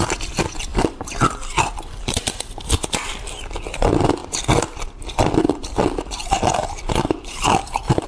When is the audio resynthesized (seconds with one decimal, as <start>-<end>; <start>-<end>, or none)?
0.0-4.2; 4.7-8.1